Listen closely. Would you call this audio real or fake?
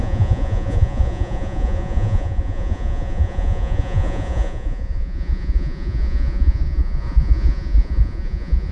fake